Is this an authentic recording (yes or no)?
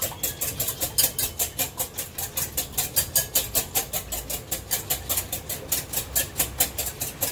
yes